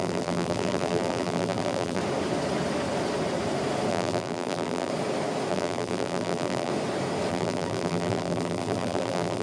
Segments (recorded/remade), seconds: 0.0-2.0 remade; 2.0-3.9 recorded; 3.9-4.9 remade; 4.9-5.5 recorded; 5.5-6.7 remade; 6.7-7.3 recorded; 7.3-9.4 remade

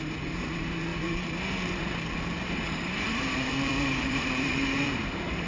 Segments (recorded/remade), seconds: 0.0-5.5 remade

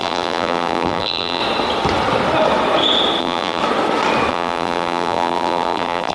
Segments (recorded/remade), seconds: 0.0-1.4 remade; 1.4-3.2 recorded; 3.2-3.6 remade; 3.6-4.3 recorded; 4.3-6.1 remade